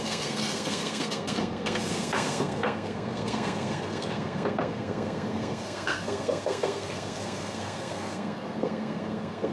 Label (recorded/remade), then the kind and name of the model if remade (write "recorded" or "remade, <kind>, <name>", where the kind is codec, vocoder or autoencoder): remade, codec, SNAC